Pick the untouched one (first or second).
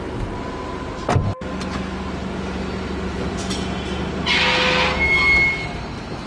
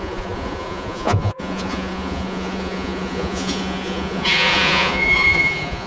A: first